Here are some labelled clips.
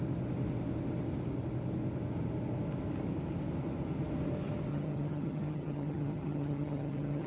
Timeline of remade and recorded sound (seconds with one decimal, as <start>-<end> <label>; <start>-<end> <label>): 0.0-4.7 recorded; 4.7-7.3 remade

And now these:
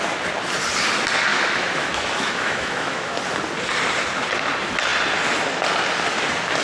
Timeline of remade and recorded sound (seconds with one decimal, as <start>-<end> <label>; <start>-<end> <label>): 0.0-1.3 recorded; 1.3-3.2 remade; 3.2-6.6 recorded

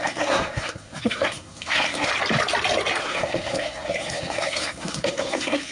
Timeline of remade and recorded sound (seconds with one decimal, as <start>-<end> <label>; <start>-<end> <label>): 0.0-2.1 remade; 2.1-3.0 recorded; 3.0-5.7 remade